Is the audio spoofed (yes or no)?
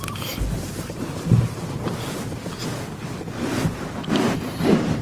no